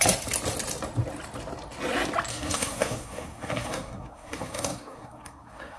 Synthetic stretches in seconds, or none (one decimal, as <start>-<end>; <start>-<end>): 2.3-5.8